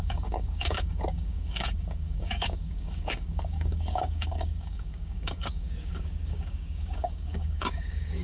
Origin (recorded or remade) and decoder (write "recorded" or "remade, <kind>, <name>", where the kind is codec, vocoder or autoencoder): remade, codec, DAC